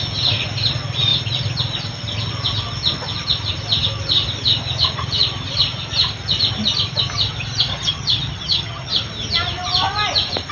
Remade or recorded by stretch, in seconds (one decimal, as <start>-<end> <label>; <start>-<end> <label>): 0.0-7.7 recorded; 7.7-8.9 remade; 8.9-10.5 recorded